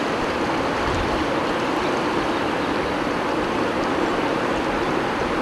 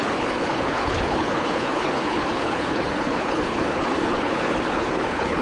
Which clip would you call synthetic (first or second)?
second